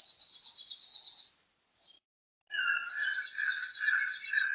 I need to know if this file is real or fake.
real